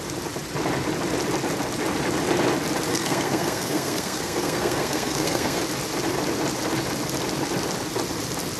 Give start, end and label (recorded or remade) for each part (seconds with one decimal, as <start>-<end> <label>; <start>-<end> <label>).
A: 0.0-2.9 recorded; 2.9-5.6 remade; 5.6-8.6 recorded